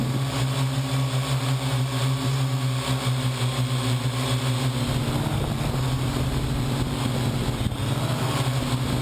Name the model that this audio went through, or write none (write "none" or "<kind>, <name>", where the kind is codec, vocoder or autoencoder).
none